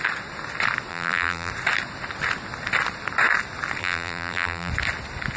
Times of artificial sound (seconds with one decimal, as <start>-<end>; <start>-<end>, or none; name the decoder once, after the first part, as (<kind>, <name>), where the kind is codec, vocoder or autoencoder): 0.9-1.5 (vocoder, BigVGAN v2); 3.8-4.7